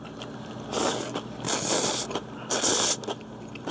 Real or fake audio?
real